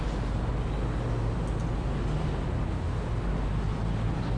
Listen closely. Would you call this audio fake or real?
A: real